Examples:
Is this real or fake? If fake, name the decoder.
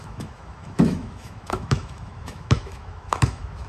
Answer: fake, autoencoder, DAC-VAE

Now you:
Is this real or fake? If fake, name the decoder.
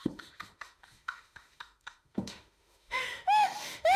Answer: fake, autoencoder, DAC-VAE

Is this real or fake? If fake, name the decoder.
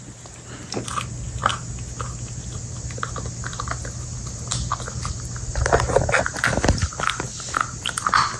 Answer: real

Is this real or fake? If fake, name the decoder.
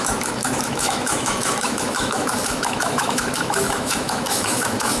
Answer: fake, autoencoder, DAC-VAE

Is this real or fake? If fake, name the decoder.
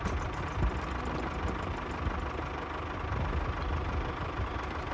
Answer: real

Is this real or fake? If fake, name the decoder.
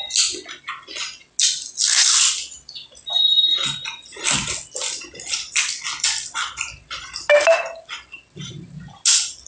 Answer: real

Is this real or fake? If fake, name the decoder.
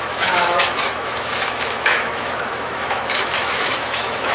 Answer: fake, autoencoder, DAC-VAE